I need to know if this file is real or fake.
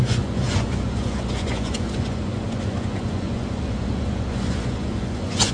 fake